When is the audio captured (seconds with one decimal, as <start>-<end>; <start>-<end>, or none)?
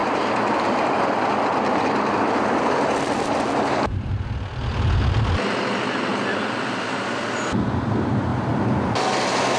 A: 0.0-9.6